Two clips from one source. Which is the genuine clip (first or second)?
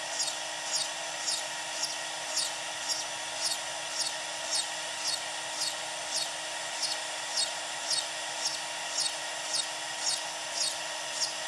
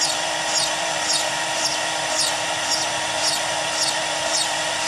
first